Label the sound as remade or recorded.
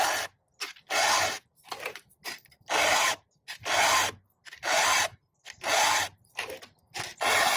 recorded